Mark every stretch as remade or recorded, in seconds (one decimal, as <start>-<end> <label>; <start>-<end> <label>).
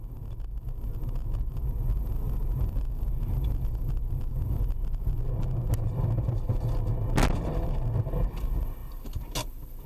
0.0-9.9 recorded